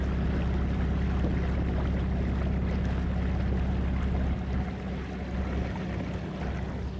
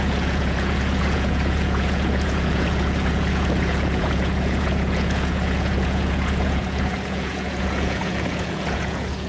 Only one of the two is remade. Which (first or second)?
second